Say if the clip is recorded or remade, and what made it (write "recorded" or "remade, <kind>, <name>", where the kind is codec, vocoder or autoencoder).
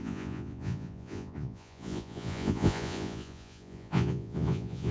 remade, vocoder, Vocos